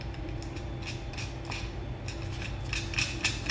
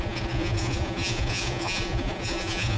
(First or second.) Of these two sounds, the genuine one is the first